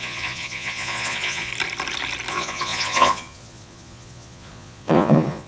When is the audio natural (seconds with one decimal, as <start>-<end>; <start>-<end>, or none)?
1.5-2.3